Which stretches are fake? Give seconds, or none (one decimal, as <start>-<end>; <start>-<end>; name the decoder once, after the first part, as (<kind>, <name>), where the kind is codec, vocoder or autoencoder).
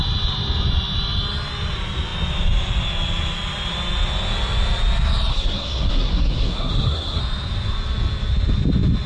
5.3-7.2 (codec, SNAC)